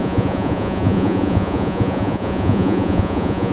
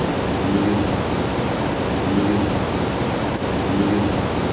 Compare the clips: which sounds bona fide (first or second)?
second